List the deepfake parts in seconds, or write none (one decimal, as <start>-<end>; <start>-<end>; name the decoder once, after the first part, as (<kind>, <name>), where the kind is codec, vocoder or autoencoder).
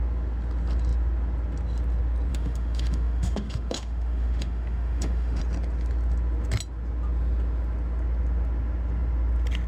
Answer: 2.3-5.4 (autoencoder, DAC-VAE)